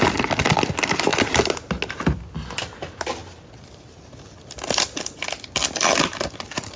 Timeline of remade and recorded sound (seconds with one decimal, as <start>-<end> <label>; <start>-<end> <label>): 0.0-6.8 recorded